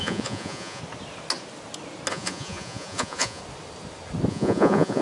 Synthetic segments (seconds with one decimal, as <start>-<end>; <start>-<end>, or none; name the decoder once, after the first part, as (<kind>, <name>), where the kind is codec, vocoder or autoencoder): 0.0-0.8 (vocoder, Vocos); 2.1-3.4; 4.3-5.0